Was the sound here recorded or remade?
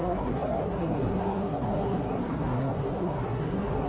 remade